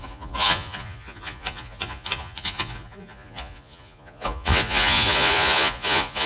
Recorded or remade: remade